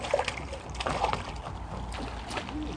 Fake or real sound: real